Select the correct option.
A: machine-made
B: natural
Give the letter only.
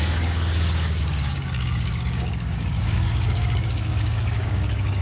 A